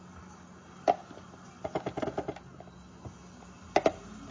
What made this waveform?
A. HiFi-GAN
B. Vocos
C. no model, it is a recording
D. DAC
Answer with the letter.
C